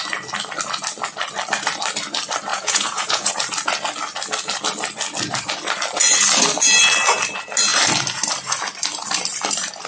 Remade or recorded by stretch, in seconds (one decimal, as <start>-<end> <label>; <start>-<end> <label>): 0.0-2.5 recorded; 2.5-3.3 remade; 3.3-9.9 recorded